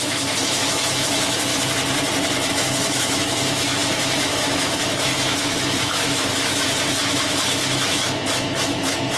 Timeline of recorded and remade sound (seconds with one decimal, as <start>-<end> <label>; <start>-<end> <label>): 0.0-1.5 remade; 1.5-2.5 recorded; 2.5-9.2 remade